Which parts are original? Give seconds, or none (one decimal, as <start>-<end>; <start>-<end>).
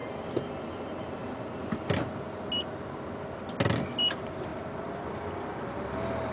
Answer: 0.0-6.3